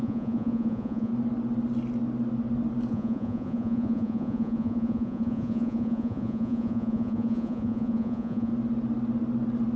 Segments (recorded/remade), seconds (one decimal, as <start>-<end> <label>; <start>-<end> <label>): 0.0-1.1 remade; 1.1-2.9 recorded; 2.9-8.5 remade; 8.5-9.8 recorded